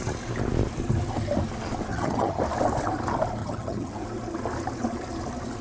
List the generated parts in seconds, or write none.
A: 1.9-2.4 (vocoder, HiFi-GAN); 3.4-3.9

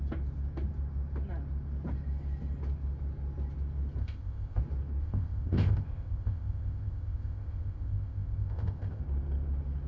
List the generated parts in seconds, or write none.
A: 4.0-4.6 (codec, ZipCodec); 5.0-9.0

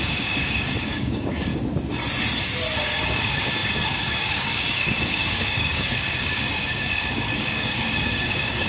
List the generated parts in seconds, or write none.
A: 0.0-1.5 (codec, DAC); 2.8-8.7

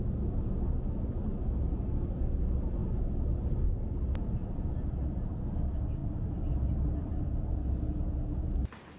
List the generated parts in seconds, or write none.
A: none

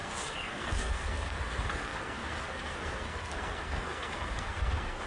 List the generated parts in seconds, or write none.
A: 0.0-5.1 (codec, SNAC)

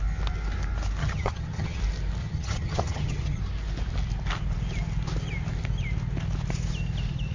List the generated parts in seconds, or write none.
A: 1.0-1.8 (vocoder, HiFi-GAN); 2.2-3.4

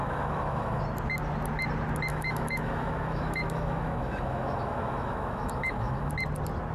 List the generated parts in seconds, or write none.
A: 0.0-0.8 (autoencoder, DAC-VAE); 2.1-6.1

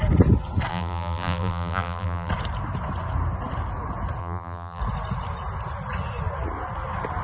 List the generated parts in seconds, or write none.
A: 0.7-2.3 (vocoder, BigVGAN v2); 4.2-4.8